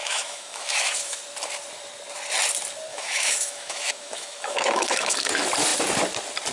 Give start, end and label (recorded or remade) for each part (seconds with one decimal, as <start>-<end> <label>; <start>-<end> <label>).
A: 0.0-1.2 remade; 1.2-2.9 recorded; 2.9-5.3 remade; 5.3-6.5 recorded